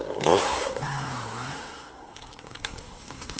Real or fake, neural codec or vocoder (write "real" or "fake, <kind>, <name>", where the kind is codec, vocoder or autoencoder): fake, codec, SNAC